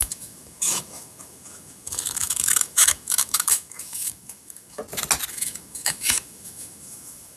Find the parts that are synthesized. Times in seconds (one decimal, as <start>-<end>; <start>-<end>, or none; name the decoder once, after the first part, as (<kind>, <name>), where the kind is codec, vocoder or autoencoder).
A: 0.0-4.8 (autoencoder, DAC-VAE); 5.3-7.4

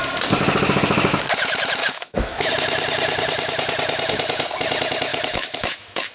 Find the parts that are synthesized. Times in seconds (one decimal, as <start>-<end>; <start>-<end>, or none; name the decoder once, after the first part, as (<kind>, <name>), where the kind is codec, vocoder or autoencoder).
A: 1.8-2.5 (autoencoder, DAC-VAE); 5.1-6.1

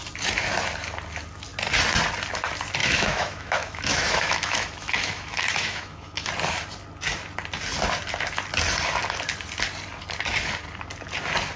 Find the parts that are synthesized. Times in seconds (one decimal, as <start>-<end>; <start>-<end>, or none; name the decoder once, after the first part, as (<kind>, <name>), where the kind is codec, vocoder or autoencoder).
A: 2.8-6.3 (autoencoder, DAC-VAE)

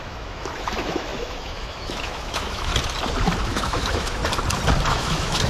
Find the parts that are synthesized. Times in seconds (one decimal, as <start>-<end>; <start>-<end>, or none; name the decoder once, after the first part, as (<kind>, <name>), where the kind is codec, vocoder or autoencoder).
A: 0.0-2.7 (autoencoder, DAC-VAE); 3.4-4.2; 4.9-5.5

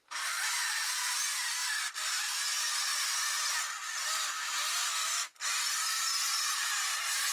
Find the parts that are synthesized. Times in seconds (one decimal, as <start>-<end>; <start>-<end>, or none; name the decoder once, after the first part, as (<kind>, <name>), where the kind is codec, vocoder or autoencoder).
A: none